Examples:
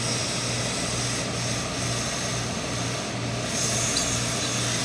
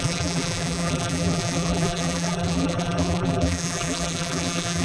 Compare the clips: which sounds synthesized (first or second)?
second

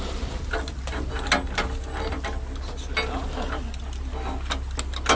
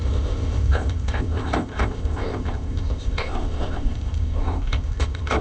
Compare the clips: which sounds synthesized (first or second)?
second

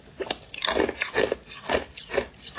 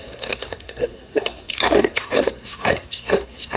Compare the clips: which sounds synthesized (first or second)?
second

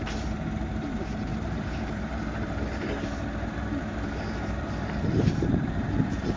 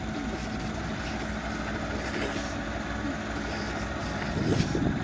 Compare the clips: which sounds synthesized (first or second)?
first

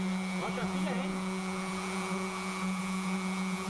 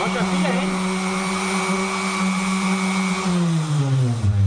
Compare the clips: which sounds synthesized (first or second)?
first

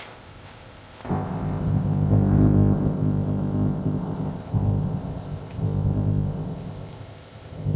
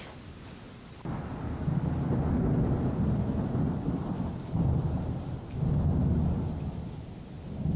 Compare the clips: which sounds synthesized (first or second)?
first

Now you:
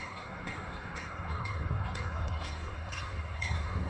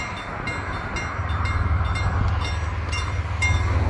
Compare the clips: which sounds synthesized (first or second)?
first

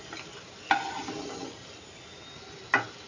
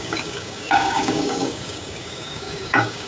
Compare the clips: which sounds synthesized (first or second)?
second